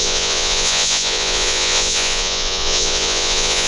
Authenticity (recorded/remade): remade